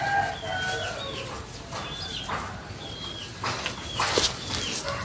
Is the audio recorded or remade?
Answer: recorded